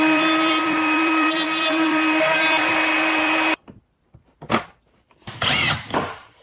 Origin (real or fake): fake